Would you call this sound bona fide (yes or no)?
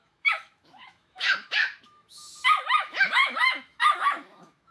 no